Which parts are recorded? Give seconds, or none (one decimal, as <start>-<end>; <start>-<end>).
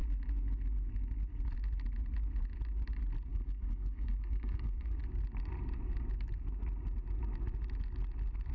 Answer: 0.0-3.3; 5.0-8.5